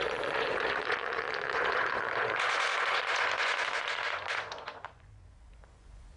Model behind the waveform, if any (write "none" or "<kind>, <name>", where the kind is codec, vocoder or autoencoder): vocoder, Vocos